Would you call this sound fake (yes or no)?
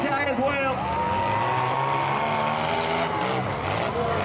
no